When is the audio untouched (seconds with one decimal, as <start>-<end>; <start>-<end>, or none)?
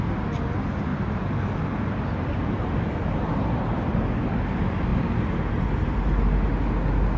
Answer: 0.0-0.9; 3.9-7.2